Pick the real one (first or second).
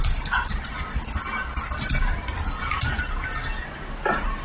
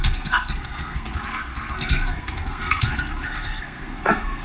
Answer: first